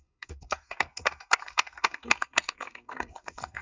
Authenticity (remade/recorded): remade